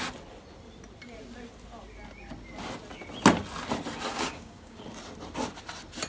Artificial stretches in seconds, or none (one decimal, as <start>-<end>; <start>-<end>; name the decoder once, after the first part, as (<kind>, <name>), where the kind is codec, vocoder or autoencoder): 4.1-4.8 (codec, DAC)